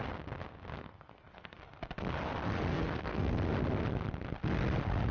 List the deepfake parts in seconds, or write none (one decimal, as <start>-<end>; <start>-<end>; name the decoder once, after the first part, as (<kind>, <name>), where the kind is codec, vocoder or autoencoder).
0.8-1.6 (codec, SNAC); 2.7-3.4

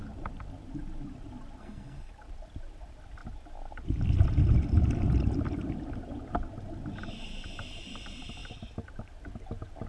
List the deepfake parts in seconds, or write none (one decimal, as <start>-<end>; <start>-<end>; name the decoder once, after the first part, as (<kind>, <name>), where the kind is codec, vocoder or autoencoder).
1.6-2.1 (codec, SNAC)

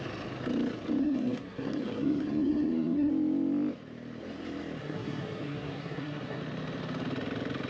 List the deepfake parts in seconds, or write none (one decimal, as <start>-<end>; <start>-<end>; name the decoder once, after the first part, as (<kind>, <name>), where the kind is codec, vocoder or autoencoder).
1.0-3.1 (codec, SNAC); 4.8-6.4

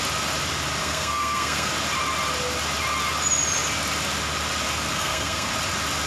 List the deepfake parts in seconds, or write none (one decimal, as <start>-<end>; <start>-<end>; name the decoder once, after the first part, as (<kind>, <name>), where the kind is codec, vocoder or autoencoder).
0.8-1.7 (codec, SNAC); 4.9-5.5

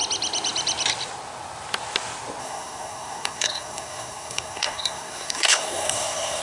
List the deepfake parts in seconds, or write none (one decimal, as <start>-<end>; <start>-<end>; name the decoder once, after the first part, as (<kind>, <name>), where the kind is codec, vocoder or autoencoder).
2.4-6.4 (codec, SNAC)

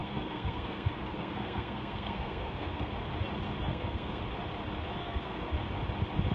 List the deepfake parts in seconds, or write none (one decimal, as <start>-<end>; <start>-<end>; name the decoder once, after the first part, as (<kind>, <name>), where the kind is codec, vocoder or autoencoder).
0.0-2.9 (codec, SNAC); 3.7-4.2; 5.0-5.5

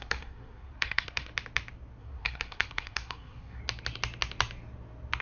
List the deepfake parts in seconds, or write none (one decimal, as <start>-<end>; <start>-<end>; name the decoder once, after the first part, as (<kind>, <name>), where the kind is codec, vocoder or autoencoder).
0.0-1.3 (codec, SNAC); 2.0-3.6